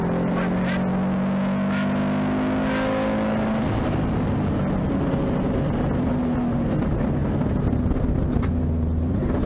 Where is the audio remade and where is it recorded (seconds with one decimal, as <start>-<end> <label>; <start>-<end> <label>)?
0.0-9.5 recorded